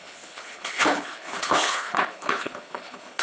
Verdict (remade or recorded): remade